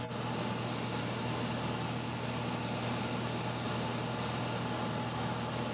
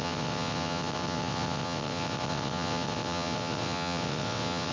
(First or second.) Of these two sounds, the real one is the first